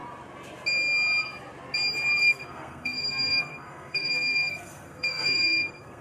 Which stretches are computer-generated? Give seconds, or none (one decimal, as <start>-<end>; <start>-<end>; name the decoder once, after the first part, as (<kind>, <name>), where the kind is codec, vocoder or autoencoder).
2.2-6.0 (codec, SNAC)